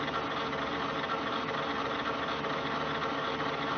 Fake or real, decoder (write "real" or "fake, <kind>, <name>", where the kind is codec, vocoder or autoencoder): real